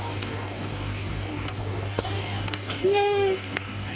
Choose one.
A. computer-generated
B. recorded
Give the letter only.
A